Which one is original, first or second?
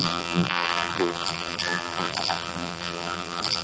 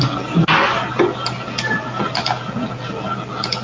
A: second